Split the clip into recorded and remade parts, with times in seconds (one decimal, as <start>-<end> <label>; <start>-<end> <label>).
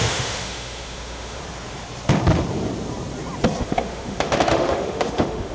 0.0-1.4 remade; 1.4-3.6 recorded; 3.6-5.5 remade